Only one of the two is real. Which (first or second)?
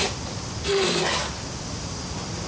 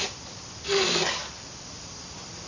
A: first